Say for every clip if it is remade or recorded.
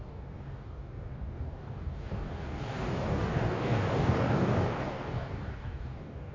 remade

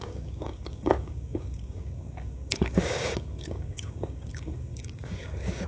remade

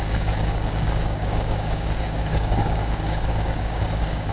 remade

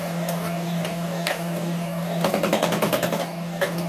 remade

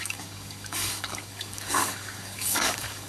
remade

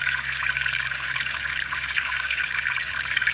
remade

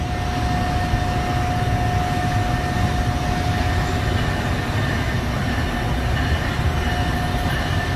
recorded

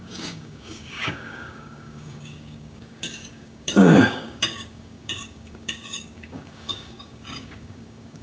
remade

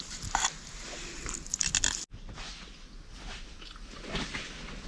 recorded